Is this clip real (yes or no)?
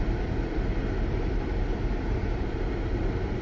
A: yes